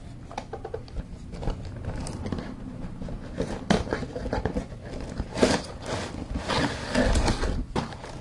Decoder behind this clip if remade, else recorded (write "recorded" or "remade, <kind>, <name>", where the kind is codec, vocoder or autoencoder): recorded